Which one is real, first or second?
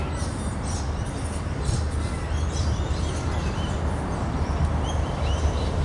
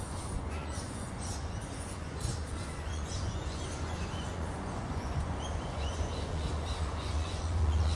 first